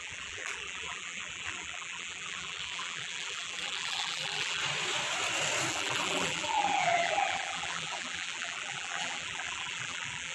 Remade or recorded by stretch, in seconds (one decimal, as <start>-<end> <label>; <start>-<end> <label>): 0.0-4.6 remade; 4.6-5.7 recorded; 5.7-10.3 remade

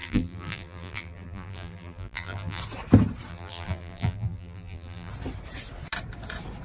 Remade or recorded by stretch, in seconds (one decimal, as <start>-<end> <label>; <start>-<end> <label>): 0.0-2.6 remade; 2.6-3.3 recorded; 3.3-5.1 remade; 5.1-6.6 recorded

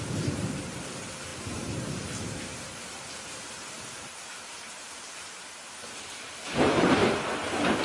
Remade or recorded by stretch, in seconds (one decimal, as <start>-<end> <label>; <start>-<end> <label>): 0.0-7.0 remade; 7.0-7.8 recorded

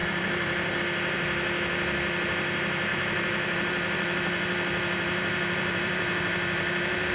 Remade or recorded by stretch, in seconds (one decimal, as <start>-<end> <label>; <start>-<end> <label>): 0.0-0.8 remade; 0.8-2.9 recorded; 2.9-7.1 remade

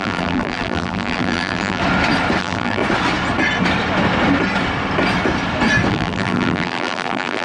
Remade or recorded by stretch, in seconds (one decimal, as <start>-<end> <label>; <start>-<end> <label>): 0.0-1.8 remade; 1.8-2.4 recorded; 2.4-2.8 remade; 2.8-5.9 recorded; 5.9-7.4 remade